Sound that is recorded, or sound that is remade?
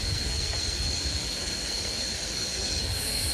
remade